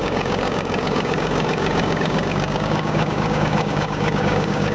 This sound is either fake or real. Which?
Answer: fake